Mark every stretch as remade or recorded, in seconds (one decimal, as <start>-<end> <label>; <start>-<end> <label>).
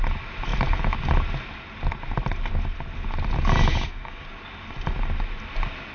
0.0-3.7 recorded; 3.7-4.4 remade; 4.4-5.9 recorded